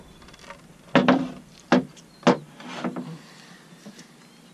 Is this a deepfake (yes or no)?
no